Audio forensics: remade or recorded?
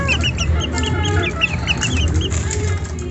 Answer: recorded